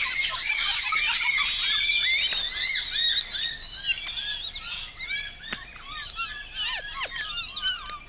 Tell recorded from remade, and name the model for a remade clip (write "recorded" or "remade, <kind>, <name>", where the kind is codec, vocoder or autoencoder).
recorded